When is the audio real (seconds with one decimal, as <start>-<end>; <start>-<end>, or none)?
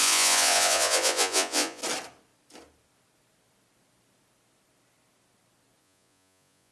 1.8-5.8